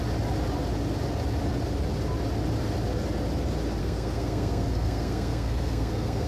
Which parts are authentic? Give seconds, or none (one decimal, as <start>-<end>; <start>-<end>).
0.0-3.8